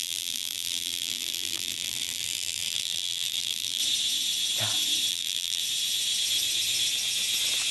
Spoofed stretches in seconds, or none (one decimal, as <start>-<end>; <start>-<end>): 0.0-3.8; 5.1-5.6